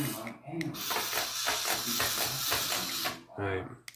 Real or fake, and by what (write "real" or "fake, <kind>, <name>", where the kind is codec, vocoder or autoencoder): real